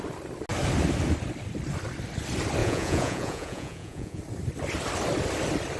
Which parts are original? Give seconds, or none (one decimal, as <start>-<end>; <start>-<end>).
0.0-2.6; 4.2-5.8

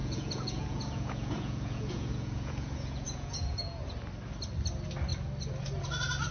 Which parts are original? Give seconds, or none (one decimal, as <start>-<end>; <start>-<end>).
3.8-6.3